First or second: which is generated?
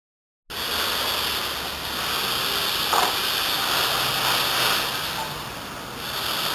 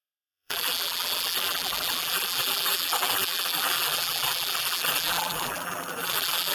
second